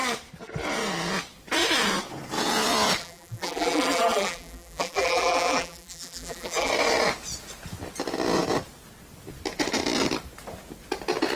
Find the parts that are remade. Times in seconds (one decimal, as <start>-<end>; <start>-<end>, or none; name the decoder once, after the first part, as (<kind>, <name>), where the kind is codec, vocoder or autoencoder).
3.0-6.7 (vocoder, BigVGAN v2)